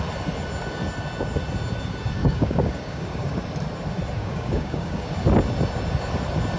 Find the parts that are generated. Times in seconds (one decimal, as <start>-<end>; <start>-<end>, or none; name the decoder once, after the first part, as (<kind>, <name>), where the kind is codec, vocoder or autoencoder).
2.2-3.4 (codec, DAC); 4.2-5.1